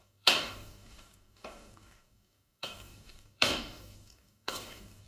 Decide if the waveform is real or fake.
fake